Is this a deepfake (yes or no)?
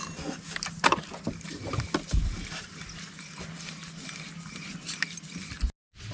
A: no